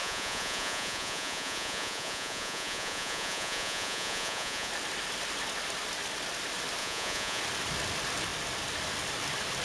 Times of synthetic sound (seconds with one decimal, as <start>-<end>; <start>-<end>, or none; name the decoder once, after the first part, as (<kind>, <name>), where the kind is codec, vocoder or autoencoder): 0.0-4.7 (vocoder, Vocos); 6.8-7.4